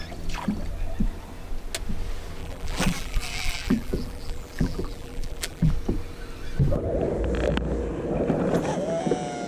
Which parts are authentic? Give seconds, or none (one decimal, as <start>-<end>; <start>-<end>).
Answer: 0.0-2.4; 5.7-9.5